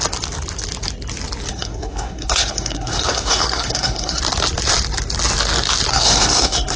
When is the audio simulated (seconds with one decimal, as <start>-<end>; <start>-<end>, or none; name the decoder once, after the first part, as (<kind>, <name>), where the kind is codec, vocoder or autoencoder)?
1.5-4.2 (codec, SNAC); 5.9-6.8